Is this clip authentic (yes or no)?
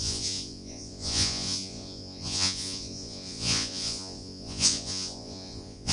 no